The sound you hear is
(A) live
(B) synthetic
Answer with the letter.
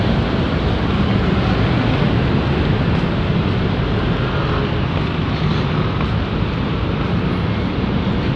A